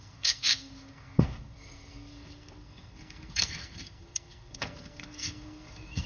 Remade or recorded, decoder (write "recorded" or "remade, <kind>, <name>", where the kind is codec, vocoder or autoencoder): remade, codec, SNAC